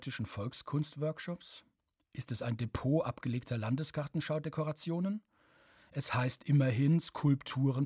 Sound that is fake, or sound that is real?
real